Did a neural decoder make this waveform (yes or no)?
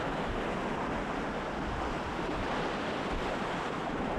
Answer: no